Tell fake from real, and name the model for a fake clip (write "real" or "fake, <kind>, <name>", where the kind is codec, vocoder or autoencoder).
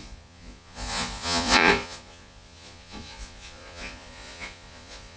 fake, vocoder, Vocos